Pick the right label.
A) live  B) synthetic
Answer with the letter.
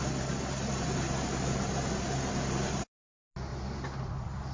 A